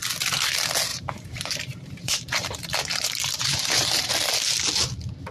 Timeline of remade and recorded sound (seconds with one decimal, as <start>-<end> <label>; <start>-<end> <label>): 0.0-0.9 recorded; 0.9-4.1 remade; 4.1-5.3 recorded